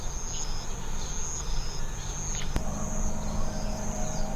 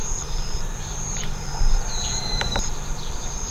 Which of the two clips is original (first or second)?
first